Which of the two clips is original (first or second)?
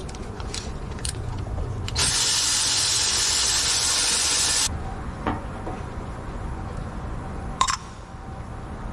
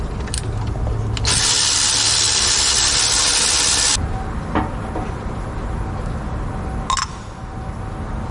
second